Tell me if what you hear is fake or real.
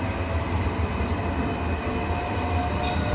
real